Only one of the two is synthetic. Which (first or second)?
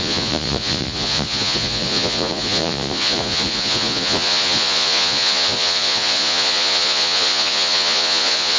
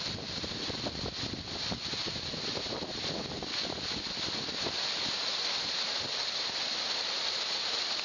first